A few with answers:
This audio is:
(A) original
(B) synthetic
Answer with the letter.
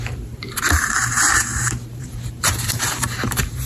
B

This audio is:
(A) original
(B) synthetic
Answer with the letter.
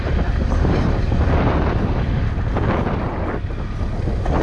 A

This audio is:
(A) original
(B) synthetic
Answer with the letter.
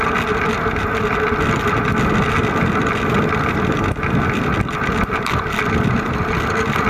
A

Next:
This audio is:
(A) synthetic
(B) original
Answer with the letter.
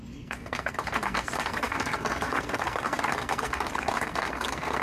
A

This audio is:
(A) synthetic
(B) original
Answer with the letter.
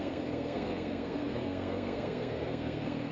A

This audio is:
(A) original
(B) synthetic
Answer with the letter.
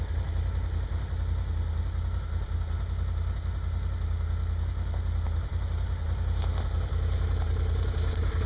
A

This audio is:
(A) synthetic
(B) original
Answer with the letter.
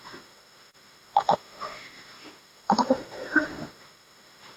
A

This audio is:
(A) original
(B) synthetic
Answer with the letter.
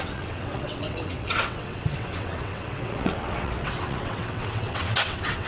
B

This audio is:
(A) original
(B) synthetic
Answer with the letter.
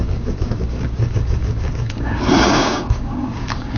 B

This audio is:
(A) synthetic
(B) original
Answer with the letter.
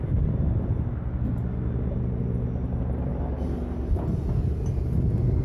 B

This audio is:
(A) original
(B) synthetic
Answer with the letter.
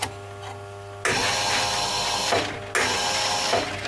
A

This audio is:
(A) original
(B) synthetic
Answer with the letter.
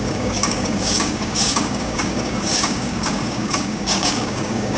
B